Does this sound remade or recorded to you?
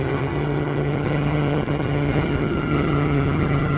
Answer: remade